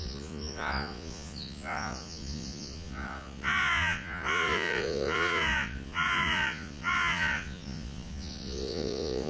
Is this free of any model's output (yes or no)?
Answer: no